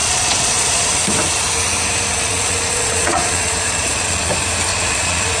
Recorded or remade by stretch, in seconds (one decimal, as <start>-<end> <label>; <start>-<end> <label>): 0.0-0.9 remade; 0.9-2.1 recorded; 2.1-4.3 remade; 4.3-4.7 recorded; 4.7-5.4 remade